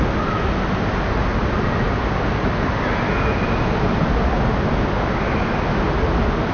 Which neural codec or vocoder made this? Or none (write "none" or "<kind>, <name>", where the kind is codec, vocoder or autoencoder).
none